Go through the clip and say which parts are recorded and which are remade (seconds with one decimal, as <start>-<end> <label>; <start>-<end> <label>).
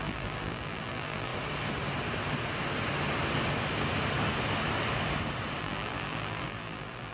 0.0-1.3 remade; 1.3-5.6 recorded; 5.6-7.1 remade